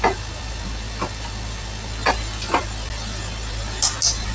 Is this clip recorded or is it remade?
recorded